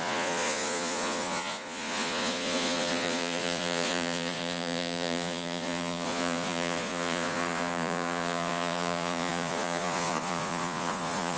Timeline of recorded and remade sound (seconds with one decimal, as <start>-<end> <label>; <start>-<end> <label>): 0.0-11.4 remade